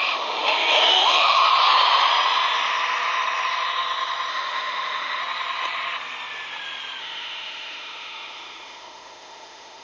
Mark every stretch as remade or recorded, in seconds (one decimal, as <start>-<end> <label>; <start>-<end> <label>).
0.0-1.4 remade; 1.4-4.3 recorded; 4.3-5.2 remade; 5.2-7.0 recorded; 7.0-9.8 remade